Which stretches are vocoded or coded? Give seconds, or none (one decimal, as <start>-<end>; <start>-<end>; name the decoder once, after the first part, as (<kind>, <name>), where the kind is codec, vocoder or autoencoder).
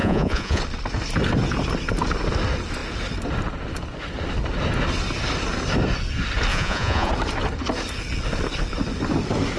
0.0-0.6 (vocoder, Vocos); 6.5-7.1